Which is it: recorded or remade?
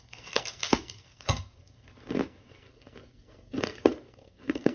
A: remade